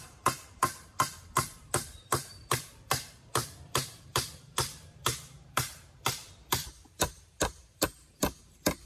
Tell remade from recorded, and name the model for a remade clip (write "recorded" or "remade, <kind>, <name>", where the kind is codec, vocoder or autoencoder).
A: remade, vocoder, BigVGAN v2